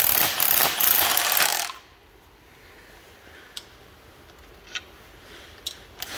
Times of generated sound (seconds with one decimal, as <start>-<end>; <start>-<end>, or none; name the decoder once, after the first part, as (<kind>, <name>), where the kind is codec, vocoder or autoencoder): none

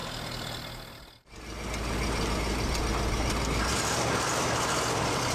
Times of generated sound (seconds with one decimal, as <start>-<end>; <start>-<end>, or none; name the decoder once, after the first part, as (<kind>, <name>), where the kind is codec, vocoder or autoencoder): none

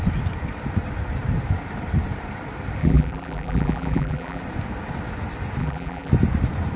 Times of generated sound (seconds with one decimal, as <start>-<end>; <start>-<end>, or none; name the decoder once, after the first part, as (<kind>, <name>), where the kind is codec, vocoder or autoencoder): 2.8-4.4 (vocoder, BigVGAN v2); 5.6-6.1

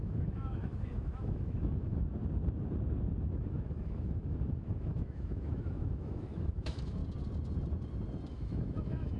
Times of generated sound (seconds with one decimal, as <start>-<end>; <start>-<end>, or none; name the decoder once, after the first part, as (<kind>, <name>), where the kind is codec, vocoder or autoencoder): 0.0-2.0 (autoencoder, DAC-VAE); 3.2-7.0; 8.3-9.2

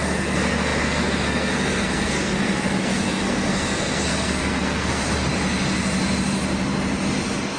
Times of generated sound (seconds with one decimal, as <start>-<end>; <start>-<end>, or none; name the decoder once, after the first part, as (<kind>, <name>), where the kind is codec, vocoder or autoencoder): 0.0-5.0 (codec, SNAC)

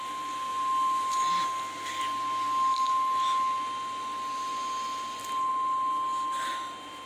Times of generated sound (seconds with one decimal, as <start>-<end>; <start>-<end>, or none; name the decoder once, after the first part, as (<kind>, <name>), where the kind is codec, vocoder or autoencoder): none

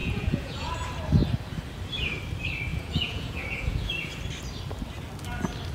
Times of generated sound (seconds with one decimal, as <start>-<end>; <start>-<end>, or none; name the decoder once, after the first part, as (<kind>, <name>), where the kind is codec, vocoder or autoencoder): 0.0-0.7 (vocoder, Vocos); 2.7-3.9